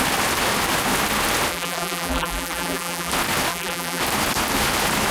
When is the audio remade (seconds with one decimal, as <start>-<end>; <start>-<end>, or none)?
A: 1.5-3.1; 3.5-4.0